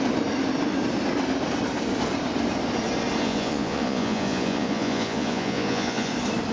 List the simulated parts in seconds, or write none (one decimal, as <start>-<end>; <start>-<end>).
3.2-6.1